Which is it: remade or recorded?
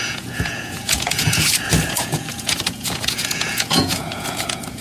remade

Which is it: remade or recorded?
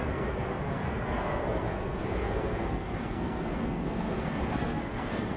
remade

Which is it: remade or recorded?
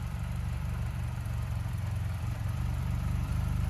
remade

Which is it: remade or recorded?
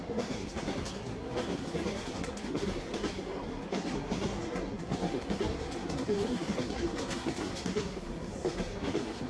remade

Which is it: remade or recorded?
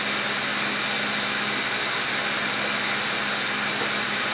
recorded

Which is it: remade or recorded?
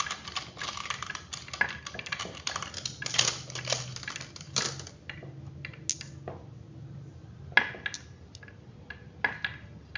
recorded